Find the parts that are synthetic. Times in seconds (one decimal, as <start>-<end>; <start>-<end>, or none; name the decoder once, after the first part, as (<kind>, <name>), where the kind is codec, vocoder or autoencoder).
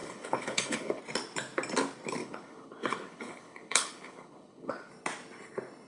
0.0-1.0 (codec, HILCodec); 2.2-4.9